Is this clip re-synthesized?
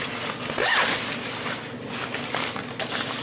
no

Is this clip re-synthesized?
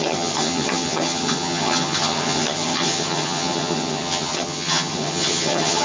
yes